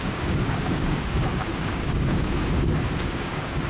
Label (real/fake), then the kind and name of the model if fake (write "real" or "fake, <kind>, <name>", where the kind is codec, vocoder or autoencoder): fake, codec, DAC